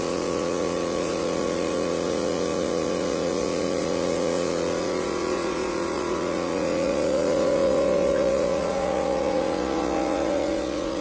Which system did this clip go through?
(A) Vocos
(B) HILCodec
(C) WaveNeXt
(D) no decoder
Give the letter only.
A